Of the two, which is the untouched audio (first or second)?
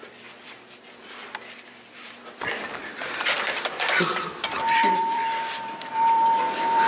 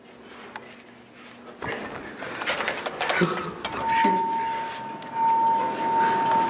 second